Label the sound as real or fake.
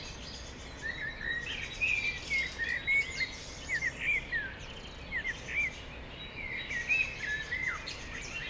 real